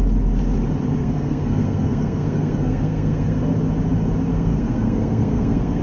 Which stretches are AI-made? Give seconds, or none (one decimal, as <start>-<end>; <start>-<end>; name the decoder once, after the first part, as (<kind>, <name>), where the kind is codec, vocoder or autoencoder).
1.0-3.5 (codec, SNAC); 4.3-5.8